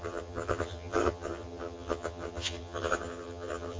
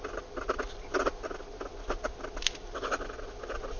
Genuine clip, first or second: second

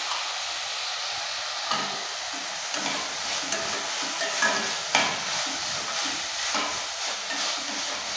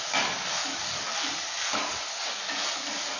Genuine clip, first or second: first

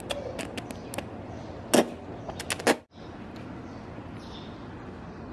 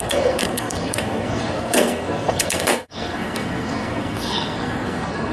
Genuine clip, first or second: first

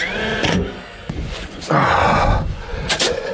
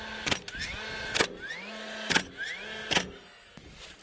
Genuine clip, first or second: second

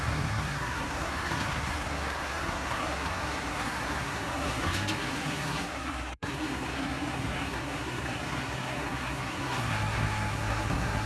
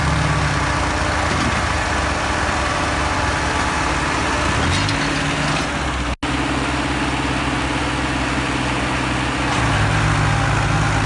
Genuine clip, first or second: second